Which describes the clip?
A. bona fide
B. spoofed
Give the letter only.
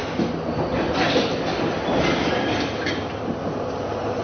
A